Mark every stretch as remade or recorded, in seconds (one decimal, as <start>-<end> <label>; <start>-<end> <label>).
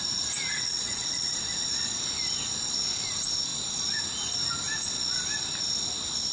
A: 0.0-0.5 recorded; 0.5-1.3 remade; 1.3-6.3 recorded